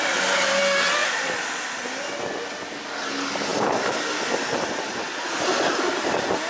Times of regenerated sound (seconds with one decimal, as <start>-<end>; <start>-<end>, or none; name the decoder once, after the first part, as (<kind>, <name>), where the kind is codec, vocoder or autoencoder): none